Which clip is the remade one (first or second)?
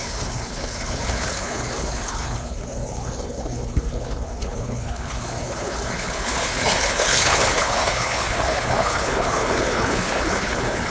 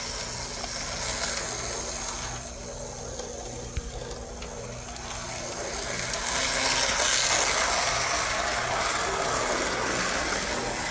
first